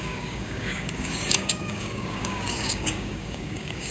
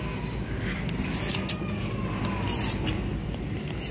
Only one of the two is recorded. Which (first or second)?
second